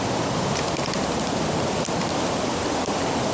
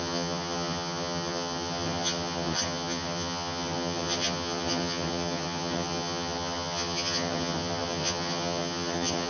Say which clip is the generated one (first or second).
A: second